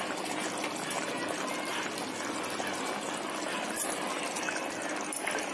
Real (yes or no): yes